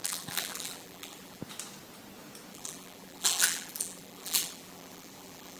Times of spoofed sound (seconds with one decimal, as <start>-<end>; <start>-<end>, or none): 0.0-1.4; 2.5-5.6